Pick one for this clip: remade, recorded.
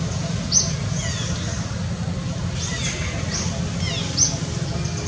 recorded